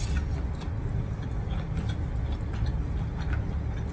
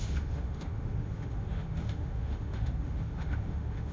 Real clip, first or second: first